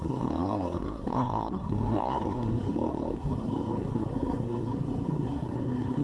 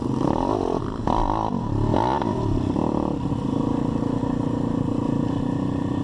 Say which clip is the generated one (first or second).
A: first